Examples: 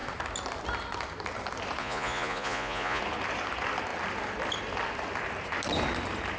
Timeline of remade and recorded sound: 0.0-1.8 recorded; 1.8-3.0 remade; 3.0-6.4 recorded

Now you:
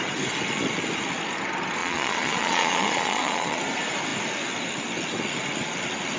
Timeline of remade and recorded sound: 0.0-1.8 recorded; 1.8-3.6 remade; 3.6-6.2 recorded

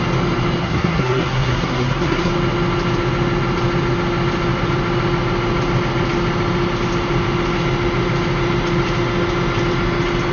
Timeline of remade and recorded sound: 0.0-0.6 recorded; 0.6-2.3 remade; 2.3-10.3 recorded

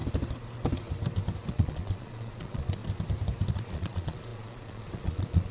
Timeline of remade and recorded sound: 0.0-1.5 recorded; 1.5-2.8 remade; 2.8-3.5 recorded; 3.5-5.5 remade

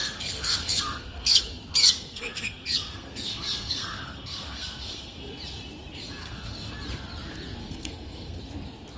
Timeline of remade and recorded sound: 0.0-1.4 remade; 1.4-1.8 recorded; 1.8-5.3 remade; 5.3-6.2 recorded; 6.2-6.7 remade; 6.7-7.6 recorded; 7.6-8.4 remade; 8.4-9.0 recorded

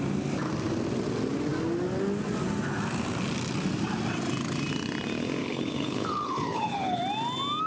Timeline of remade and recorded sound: 0.0-5.4 recorded; 5.4-7.0 remade; 7.0-7.7 recorded

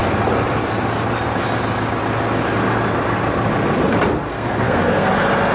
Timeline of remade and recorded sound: 0.0-4.3 recorded; 4.3-5.1 remade; 5.1-5.5 recorded

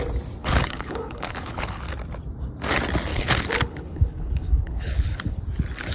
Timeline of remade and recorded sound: 0.0-0.4 recorded; 0.4-1.8 remade; 1.8-3.1 recorded; 3.1-5.4 remade; 5.4-5.9 recorded